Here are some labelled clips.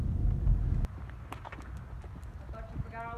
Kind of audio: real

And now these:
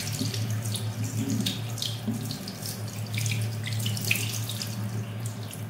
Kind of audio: real